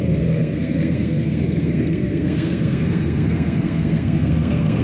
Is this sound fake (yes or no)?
yes